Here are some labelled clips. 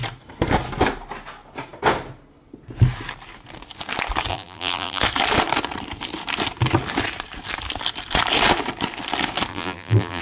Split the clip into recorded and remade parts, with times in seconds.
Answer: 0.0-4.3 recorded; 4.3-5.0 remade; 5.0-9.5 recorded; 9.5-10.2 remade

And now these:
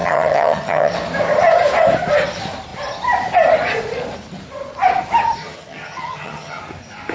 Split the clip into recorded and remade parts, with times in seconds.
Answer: 0.0-0.9 remade; 0.9-5.4 recorded; 5.4-6.6 remade; 6.6-7.1 recorded

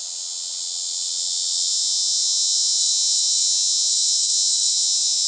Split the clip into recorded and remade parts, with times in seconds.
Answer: 0.0-1.7 recorded; 1.7-5.3 remade

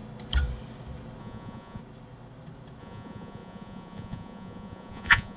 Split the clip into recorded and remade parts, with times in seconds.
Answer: 0.0-1.2 recorded; 1.2-1.8 remade; 1.8-2.8 recorded; 2.8-5.4 remade

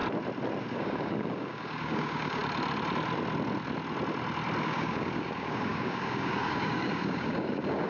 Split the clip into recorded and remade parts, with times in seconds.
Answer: 0.0-0.6 recorded; 0.6-2.4 remade; 2.4-4.6 recorded; 4.6-7.9 remade

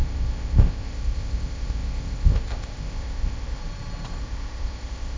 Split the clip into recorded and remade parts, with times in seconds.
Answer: 0.0-3.6 remade; 3.6-4.2 recorded; 4.2-5.2 remade

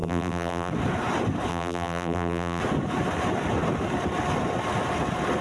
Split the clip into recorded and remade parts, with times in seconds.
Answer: 0.0-0.7 remade; 0.7-1.5 recorded; 1.5-2.6 remade; 2.6-5.4 recorded

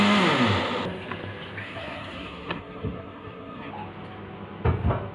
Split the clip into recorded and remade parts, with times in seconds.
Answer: 0.0-1.6 recorded; 1.6-3.7 remade; 3.7-5.1 recorded